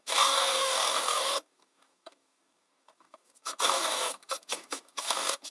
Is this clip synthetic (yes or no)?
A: yes